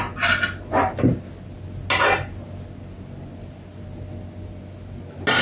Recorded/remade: recorded